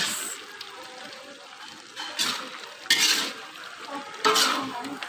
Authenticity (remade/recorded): recorded